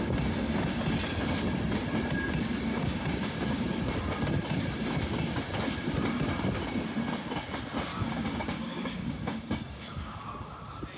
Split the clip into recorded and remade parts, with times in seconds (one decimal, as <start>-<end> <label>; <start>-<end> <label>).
0.0-2.7 recorded; 2.7-3.6 remade; 3.6-7.9 recorded; 7.9-10.2 remade; 10.2-11.0 recorded